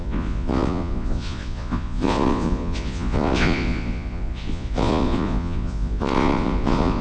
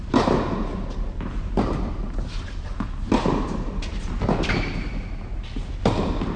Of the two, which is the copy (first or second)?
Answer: first